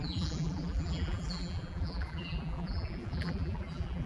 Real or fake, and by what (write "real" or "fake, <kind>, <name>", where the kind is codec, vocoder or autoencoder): fake, vocoder, BigVGAN v2